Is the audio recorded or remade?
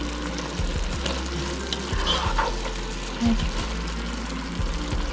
recorded